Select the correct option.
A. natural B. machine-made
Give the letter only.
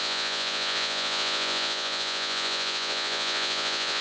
B